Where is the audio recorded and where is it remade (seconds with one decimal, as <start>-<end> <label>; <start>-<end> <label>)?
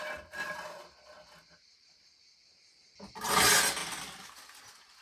0.0-5.0 recorded